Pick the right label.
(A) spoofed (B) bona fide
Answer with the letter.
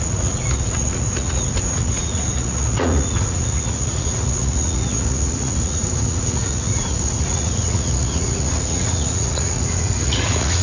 A